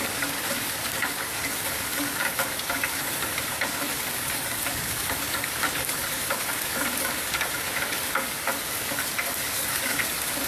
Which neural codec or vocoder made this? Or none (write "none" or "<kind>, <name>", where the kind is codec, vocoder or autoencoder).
codec, DAC